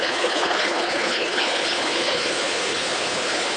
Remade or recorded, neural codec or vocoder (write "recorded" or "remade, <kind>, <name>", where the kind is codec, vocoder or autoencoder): remade, codec, HILCodec